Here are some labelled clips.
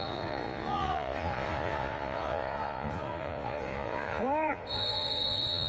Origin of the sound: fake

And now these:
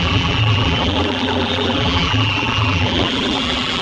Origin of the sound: fake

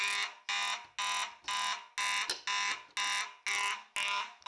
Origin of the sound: real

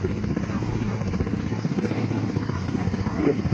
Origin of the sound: fake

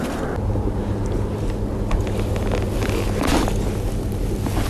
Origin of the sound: real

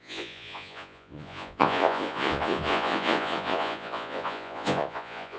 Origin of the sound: fake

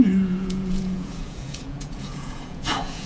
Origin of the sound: fake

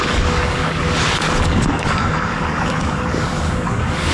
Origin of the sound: fake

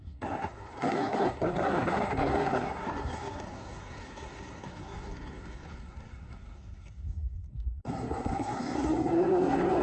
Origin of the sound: fake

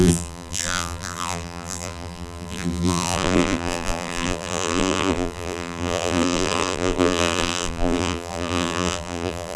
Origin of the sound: fake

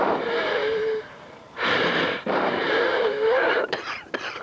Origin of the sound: fake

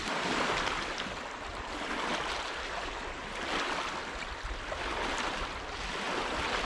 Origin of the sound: real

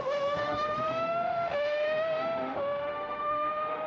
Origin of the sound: fake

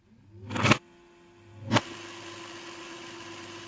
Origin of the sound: real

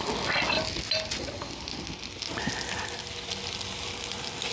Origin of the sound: real